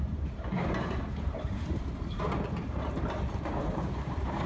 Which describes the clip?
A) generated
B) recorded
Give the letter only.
A